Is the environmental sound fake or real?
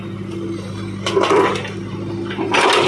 real